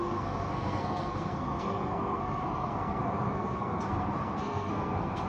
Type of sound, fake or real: fake